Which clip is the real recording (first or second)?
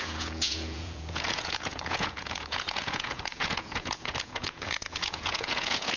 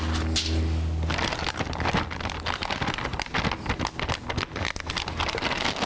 second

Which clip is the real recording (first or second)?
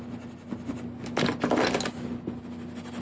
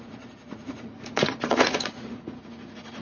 first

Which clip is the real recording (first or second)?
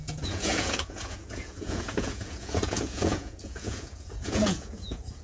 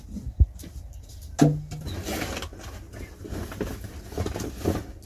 second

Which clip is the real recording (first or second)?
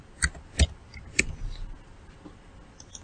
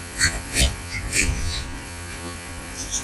first